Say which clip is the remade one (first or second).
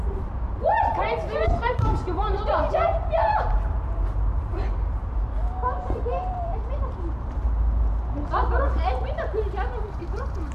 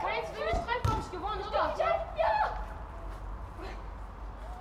first